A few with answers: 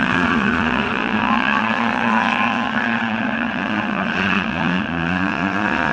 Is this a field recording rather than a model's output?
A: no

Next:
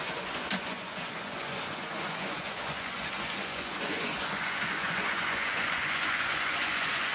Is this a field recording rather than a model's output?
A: no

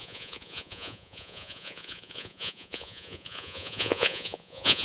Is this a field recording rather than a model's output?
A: no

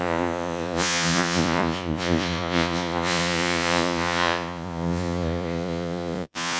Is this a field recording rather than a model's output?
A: no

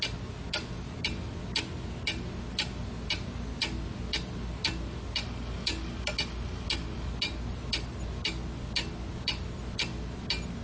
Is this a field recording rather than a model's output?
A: yes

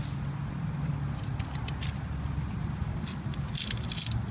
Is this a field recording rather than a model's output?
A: yes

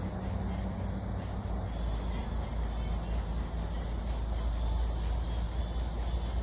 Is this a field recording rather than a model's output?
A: yes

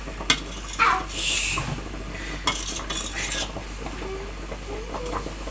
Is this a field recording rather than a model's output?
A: yes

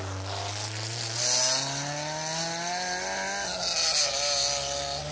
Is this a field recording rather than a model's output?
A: yes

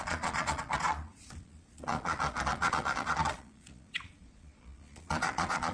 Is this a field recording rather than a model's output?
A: no